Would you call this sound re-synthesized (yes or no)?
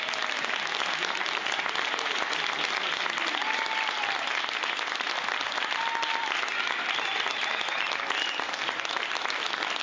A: no